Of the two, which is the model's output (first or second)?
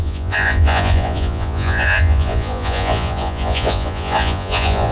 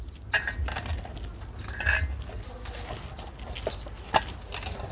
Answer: first